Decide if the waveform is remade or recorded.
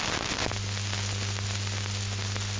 recorded